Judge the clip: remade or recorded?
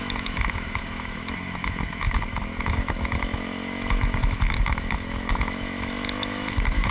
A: remade